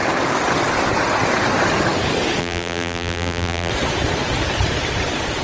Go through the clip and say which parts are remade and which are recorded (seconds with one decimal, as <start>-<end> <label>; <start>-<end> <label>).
0.0-2.4 recorded; 2.4-3.7 remade; 3.7-5.4 recorded